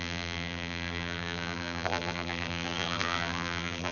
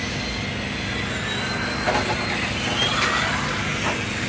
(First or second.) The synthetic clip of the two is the first